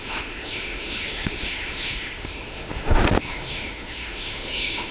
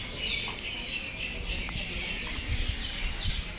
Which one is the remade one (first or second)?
first